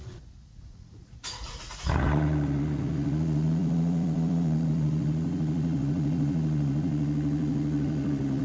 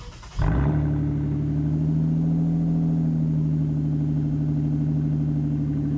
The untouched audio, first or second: second